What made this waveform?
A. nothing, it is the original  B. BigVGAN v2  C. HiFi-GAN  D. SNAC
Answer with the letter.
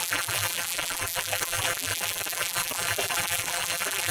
B